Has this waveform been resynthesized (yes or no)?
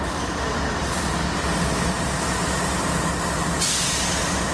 no